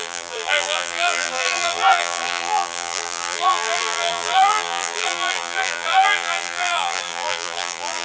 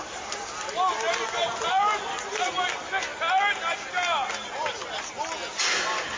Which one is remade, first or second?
first